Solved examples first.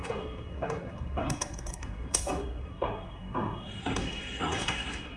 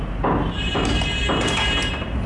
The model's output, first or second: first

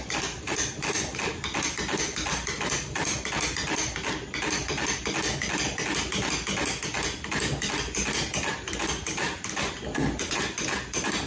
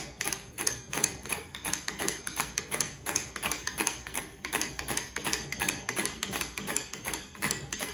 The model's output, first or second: second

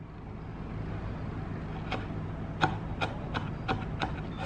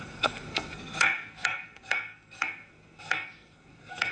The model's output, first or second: second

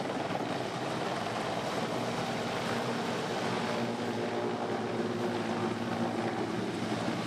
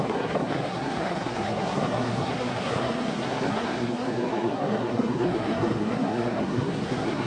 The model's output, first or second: second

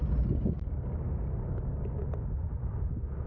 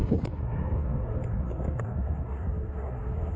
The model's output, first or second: second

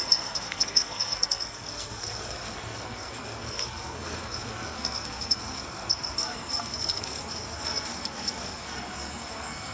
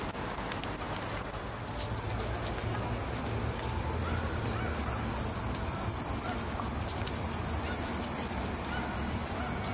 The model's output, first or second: first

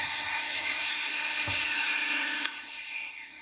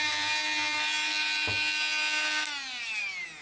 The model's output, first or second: first